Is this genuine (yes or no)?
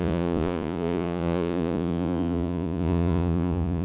no